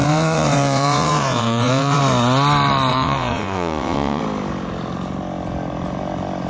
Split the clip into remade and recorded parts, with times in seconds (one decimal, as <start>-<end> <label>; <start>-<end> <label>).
0.0-2.0 remade; 2.0-2.9 recorded; 2.9-4.2 remade; 4.2-6.5 recorded